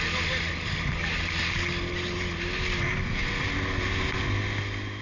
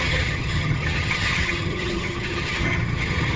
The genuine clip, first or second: first